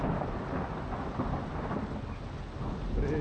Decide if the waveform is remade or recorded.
recorded